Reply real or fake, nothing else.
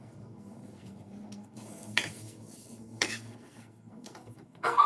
fake